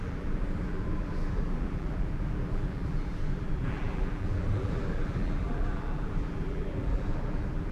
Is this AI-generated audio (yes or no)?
yes